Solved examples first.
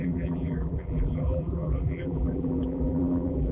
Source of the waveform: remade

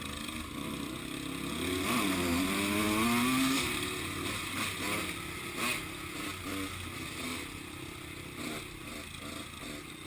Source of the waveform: recorded